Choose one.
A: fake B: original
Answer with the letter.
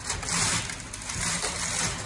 B